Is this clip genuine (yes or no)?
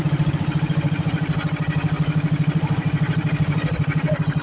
no